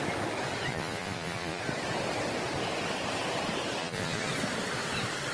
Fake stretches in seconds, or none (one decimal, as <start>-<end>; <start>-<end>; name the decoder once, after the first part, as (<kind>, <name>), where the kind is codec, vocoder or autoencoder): 0.7-1.6 (vocoder, Vocos); 3.8-4.3